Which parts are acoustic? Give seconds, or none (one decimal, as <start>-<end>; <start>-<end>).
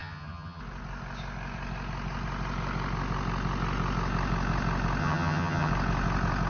0.6-5.0; 5.7-6.5